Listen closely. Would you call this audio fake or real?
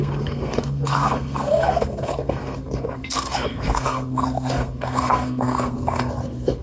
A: fake